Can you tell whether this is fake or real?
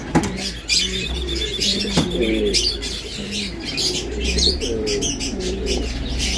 real